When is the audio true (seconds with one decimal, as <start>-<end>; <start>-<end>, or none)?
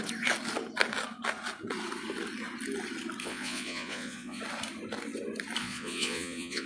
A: 0.0-3.2; 4.4-5.6